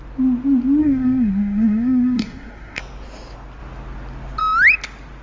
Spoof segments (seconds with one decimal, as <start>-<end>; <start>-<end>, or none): 0.8-2.8